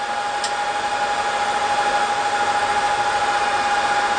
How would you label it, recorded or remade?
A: recorded